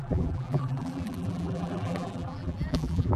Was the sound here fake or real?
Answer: fake